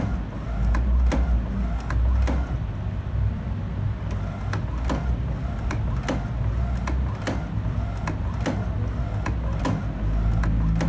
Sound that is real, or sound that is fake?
real